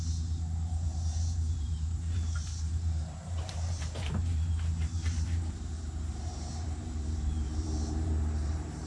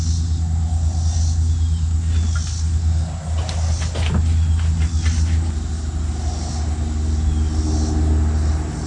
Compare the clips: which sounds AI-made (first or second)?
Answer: first